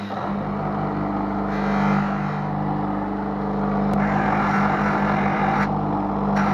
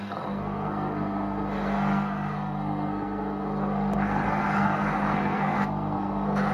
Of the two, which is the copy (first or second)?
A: second